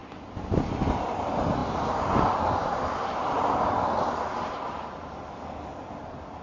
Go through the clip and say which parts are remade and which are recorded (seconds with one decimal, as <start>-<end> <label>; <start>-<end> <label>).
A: 0.0-6.4 recorded